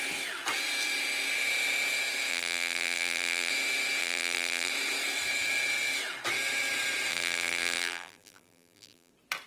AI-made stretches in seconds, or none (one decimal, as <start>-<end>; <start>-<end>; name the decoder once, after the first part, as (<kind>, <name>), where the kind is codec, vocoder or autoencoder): 2.3-3.5 (vocoder, BigVGAN v2); 4.0-4.7; 7.1-9.1